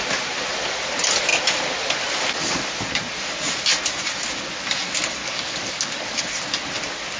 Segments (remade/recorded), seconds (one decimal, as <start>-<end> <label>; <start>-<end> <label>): 0.0-5.2 recorded; 5.2-6.2 remade; 6.2-7.2 recorded